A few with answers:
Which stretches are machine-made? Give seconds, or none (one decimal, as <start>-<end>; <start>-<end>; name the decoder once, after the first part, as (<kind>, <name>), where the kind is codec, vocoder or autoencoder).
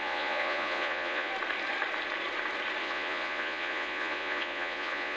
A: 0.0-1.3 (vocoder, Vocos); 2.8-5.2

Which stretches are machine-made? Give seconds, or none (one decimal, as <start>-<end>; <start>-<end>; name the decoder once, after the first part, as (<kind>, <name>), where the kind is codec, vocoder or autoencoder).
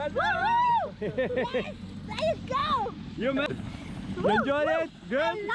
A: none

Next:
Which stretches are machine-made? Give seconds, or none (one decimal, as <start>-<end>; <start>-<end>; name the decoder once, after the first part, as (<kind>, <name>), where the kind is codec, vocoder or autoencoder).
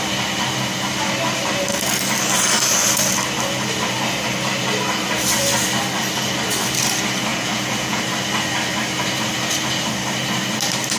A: 7.3-8.0 (vocoder, Vocos)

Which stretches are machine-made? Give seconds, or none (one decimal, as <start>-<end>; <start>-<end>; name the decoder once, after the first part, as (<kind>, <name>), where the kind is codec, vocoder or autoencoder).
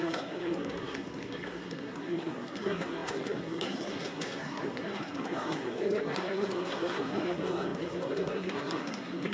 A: 0.0-9.3 (codec, SNAC)